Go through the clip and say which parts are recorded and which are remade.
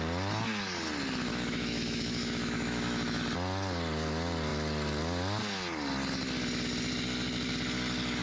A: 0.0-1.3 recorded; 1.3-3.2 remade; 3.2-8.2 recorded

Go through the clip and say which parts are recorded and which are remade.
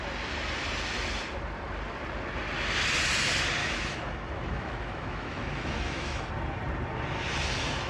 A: 0.0-3.6 recorded; 3.6-6.3 remade; 6.3-7.9 recorded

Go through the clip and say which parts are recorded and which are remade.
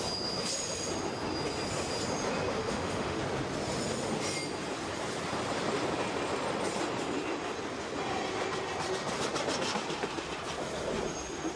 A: 0.0-2.6 recorded; 2.6-3.2 remade; 3.2-11.6 recorded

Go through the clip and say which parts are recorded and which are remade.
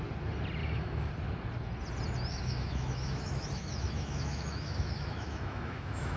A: 0.0-0.6 recorded; 0.6-1.1 remade; 1.1-2.3 recorded; 2.3-6.2 remade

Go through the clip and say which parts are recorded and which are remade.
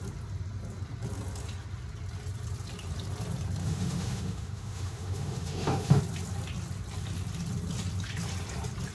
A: 0.0-3.6 recorded; 3.6-6.0 remade; 6.0-8.9 recorded